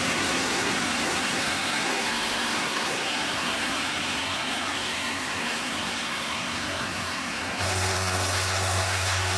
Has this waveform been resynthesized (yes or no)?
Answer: yes